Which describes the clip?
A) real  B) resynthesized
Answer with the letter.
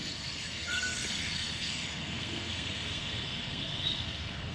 B